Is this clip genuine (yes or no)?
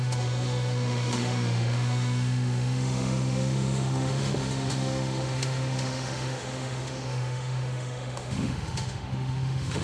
no